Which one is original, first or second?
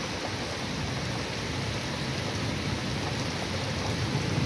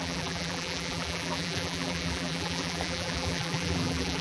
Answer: first